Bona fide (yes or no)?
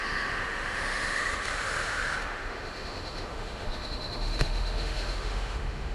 no